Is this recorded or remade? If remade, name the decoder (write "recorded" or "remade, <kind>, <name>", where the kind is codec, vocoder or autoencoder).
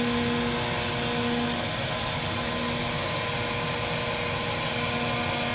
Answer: recorded